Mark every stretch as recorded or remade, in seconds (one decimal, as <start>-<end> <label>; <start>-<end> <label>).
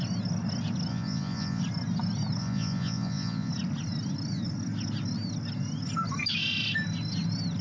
0.0-0.9 recorded; 0.9-1.6 remade; 1.6-2.4 recorded; 2.4-3.5 remade; 3.5-7.6 recorded